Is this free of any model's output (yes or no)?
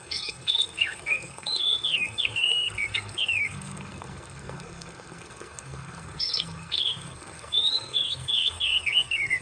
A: no